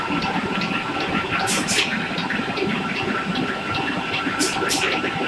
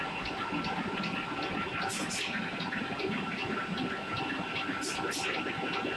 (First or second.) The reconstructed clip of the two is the first